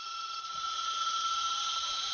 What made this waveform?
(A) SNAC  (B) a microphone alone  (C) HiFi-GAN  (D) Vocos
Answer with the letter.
D